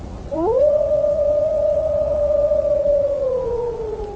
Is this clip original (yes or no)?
no